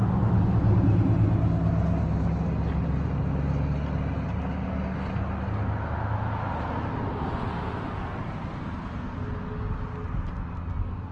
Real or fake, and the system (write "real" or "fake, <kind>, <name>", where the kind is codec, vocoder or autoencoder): real